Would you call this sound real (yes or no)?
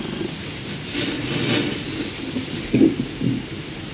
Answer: yes